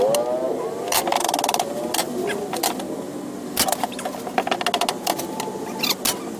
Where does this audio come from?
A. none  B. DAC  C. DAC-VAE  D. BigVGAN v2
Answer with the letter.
A